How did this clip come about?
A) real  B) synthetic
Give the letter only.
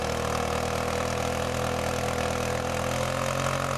A